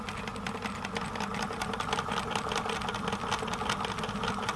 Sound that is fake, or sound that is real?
real